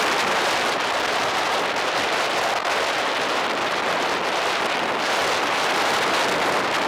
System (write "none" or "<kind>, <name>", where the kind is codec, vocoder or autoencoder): vocoder, BigVGAN v2